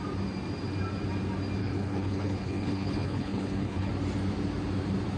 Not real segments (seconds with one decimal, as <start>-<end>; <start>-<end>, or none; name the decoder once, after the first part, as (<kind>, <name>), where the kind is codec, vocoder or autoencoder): 1.6-3.9 (codec, HILCodec)

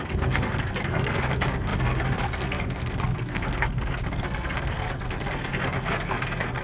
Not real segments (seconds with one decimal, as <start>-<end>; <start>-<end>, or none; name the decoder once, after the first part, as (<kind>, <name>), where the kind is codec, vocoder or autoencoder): 0.0-6.6 (codec, SNAC)

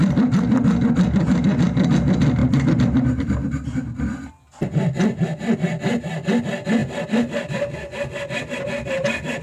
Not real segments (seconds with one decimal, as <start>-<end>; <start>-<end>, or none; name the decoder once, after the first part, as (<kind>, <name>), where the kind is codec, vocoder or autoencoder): none

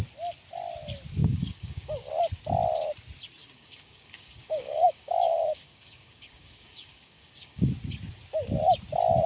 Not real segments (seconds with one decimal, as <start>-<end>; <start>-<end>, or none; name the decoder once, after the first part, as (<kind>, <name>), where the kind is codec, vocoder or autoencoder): 1.2-2.1 (codec, DAC); 3.4-7.7